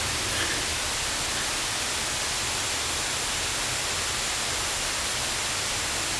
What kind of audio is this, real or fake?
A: real